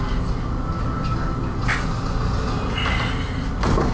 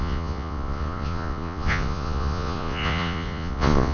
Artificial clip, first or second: second